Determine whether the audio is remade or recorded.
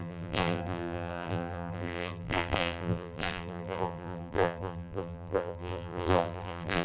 remade